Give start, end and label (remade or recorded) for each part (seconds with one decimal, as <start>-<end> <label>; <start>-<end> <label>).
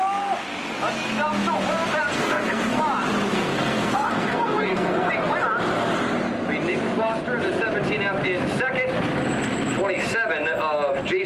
0.0-2.1 recorded; 2.1-2.8 remade; 2.8-3.3 recorded; 3.3-5.1 remade; 5.1-11.3 recorded